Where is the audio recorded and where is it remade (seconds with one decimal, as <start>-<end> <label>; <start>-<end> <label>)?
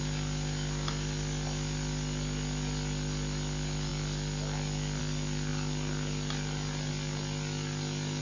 0.0-8.2 recorded